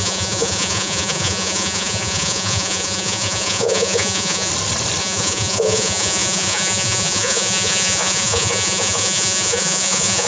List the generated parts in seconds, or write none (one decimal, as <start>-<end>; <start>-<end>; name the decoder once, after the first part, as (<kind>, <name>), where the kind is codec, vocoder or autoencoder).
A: 0.0-4.5 (vocoder, Vocos); 5.0-10.3